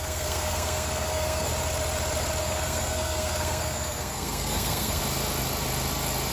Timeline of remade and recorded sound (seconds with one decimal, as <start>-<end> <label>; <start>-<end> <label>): 0.0-1.5 remade; 1.5-2.4 recorded; 2.4-5.0 remade; 5.0-6.3 recorded